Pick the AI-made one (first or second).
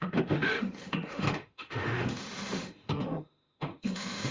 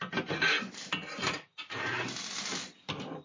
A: first